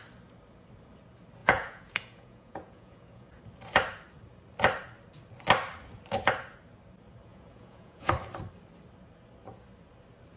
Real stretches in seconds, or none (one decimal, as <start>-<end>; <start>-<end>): 0.0-1.4; 3.4-7.3; 8.1-10.4